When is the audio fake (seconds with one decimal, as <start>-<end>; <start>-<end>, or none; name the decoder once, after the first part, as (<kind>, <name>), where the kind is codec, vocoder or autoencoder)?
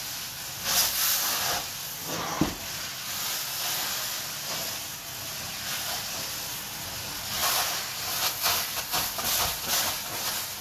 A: none